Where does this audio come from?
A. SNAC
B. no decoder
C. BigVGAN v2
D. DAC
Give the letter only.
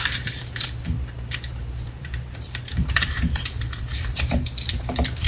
C